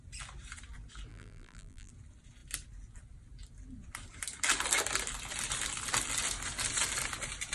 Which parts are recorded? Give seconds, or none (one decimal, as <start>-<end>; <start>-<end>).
0.0-1.1; 1.9-7.5